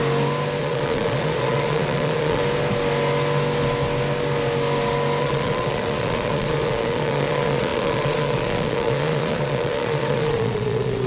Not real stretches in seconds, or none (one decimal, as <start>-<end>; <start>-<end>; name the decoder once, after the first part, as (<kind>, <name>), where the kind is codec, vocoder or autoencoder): 0.6-2.4 (vocoder, Vocos); 5.2-11.1